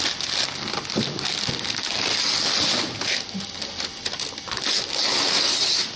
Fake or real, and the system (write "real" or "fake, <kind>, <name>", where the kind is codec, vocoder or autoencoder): real